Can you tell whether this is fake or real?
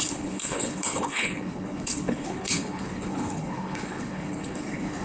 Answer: fake